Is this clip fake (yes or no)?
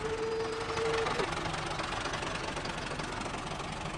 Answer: no